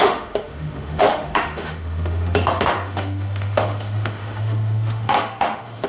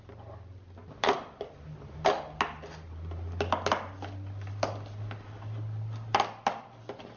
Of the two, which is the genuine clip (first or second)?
second